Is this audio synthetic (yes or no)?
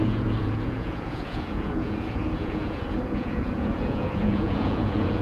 yes